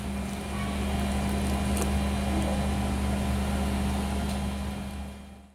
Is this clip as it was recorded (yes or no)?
yes